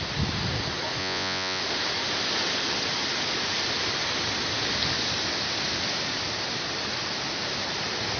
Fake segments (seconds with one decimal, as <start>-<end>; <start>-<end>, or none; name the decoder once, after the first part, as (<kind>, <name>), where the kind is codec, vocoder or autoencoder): 1.0-1.6 (vocoder, Vocos)